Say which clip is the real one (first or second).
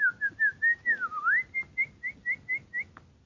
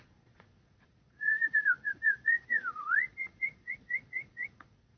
first